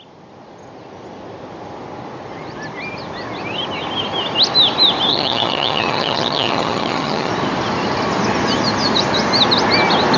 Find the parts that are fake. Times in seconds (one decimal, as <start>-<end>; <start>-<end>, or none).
5.1-7.3